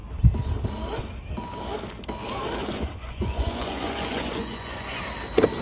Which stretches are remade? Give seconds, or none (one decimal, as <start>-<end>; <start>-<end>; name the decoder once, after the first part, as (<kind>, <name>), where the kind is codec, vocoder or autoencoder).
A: 2.6-5.0 (vocoder, Vocos)